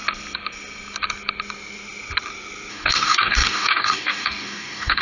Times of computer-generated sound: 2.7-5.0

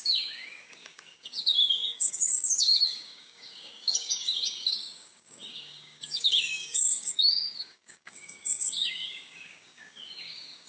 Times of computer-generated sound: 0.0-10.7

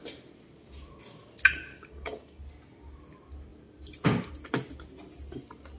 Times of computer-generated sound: 1.7-2.4

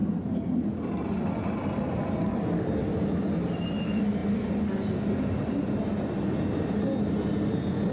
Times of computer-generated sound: none

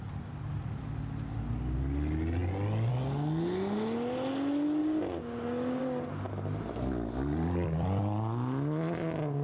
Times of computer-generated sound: 4.8-5.8

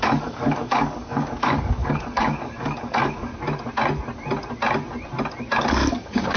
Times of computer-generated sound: 0.0-3.3; 5.7-6.4

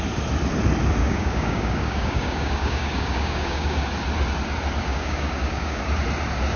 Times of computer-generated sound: 1.0-3.8; 4.8-5.8